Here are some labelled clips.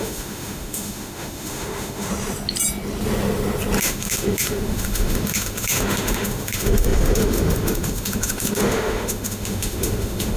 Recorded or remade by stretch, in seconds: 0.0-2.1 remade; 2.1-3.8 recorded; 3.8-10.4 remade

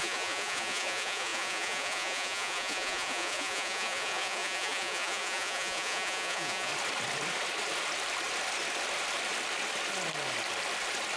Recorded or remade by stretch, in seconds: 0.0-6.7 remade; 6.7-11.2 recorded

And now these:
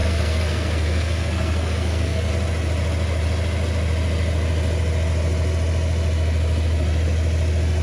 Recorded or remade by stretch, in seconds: 0.0-2.3 remade; 2.3-7.8 recorded

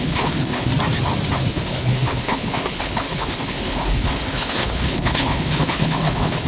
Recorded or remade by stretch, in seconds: 0.0-0.7 remade; 0.7-1.5 recorded; 1.5-6.5 remade